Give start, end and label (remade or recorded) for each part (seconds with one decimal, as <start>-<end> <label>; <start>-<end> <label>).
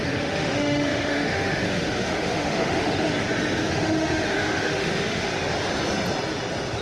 0.0-3.1 remade; 3.1-3.7 recorded; 3.7-5.3 remade; 5.3-6.8 recorded